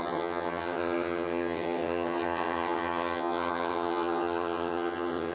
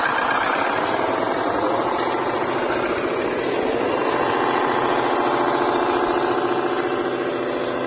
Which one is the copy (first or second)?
first